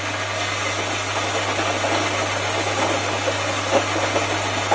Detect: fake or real real